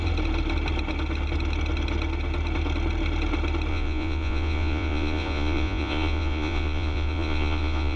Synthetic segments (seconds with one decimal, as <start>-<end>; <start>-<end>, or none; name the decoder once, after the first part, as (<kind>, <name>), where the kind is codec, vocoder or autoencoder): 3.7-8.0 (vocoder, Vocos)